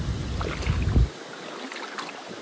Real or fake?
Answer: real